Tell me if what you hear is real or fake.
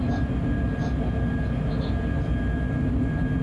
real